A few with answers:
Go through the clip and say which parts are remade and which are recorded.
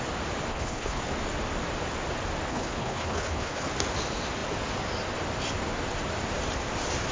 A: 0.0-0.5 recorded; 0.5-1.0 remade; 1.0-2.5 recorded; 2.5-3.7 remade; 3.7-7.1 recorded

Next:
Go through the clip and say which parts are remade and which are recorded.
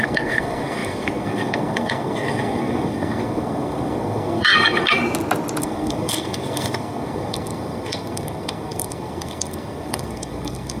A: 0.0-5.0 remade; 5.0-5.6 recorded; 5.6-10.8 remade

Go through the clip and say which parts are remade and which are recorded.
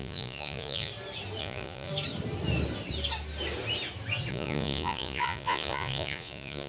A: 0.0-0.9 remade; 0.9-1.4 recorded; 1.4-1.9 remade; 1.9-4.3 recorded; 4.3-6.7 remade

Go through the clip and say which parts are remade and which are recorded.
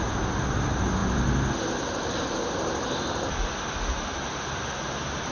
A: 0.0-5.3 recorded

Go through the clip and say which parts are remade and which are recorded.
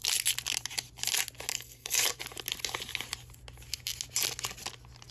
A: 0.0-1.5 recorded; 1.5-2.2 remade; 2.2-5.1 recorded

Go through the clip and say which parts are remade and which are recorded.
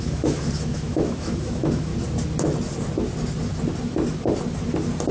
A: 0.0-1.9 remade; 1.9-5.1 recorded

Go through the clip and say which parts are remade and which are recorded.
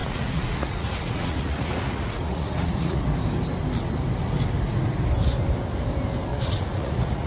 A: 0.0-3.0 remade; 3.0-6.3 recorded; 6.3-7.3 remade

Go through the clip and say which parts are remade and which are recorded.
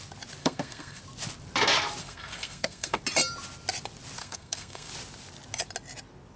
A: 0.0-0.4 recorded; 0.4-1.0 remade; 1.0-2.0 recorded; 2.0-3.0 remade; 3.0-4.2 recorded; 4.2-4.9 remade; 4.9-6.4 recorded